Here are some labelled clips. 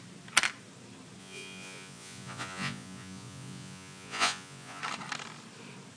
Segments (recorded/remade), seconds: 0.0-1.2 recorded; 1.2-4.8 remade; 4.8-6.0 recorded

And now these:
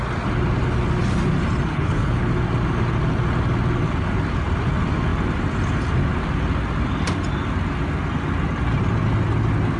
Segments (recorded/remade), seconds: 0.0-1.7 recorded; 1.7-2.3 remade; 2.3-9.8 recorded

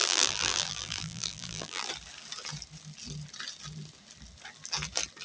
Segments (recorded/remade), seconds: 0.0-1.9 remade; 1.9-5.2 recorded

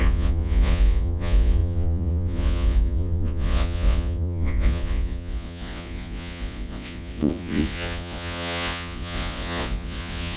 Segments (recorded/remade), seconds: 0.0-10.4 remade

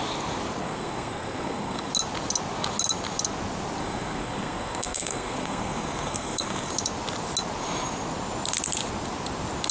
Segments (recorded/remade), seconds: 0.0-0.6 recorded; 0.6-1.9 remade; 1.9-3.8 recorded; 3.8-6.7 remade; 6.7-9.7 recorded

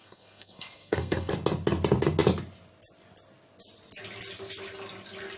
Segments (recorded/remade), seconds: 0.0-1.3 remade; 1.3-5.4 recorded